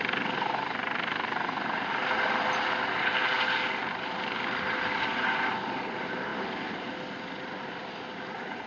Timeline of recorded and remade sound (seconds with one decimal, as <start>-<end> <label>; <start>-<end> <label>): 0.0-8.7 recorded